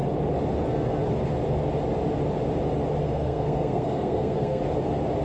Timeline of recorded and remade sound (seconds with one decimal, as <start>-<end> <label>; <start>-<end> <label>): 0.0-3.0 recorded; 3.0-4.6 remade; 4.6-5.2 recorded